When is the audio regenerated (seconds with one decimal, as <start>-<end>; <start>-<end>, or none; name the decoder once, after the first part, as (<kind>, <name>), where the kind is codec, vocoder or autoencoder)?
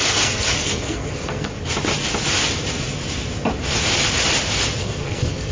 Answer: 0.0-1.5 (codec, SNAC); 4.8-5.5